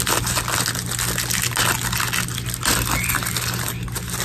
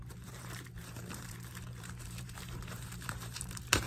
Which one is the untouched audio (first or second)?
first